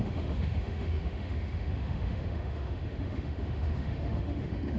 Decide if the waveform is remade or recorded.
remade